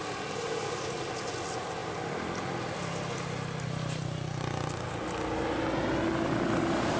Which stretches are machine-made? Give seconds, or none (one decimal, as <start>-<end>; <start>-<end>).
none